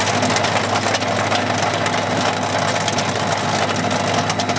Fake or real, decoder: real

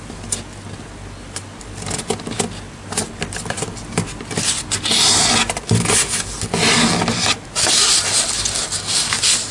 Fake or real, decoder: real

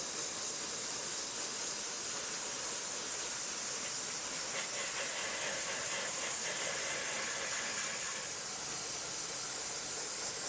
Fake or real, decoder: real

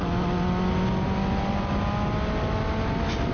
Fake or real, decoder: real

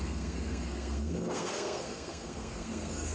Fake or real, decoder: fake, codec, SNAC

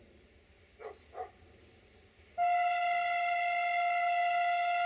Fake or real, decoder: real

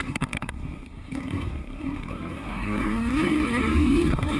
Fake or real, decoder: fake, codec, SNAC